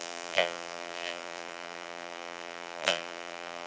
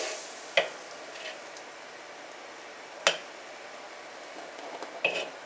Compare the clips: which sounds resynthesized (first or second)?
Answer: first